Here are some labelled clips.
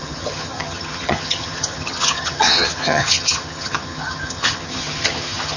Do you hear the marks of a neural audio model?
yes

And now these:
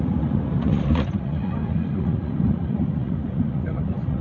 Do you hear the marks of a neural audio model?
yes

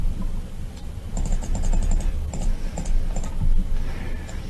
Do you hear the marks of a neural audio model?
no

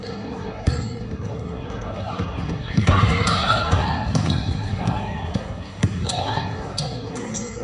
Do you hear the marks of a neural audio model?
yes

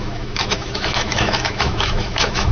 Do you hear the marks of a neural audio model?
yes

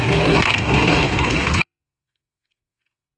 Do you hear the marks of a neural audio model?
yes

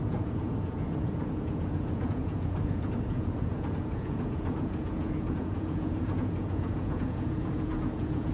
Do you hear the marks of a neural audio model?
yes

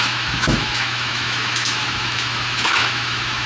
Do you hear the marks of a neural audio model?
yes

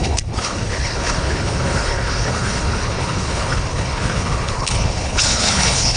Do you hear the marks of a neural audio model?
yes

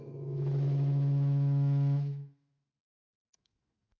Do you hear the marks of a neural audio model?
yes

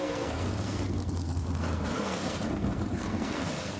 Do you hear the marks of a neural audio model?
yes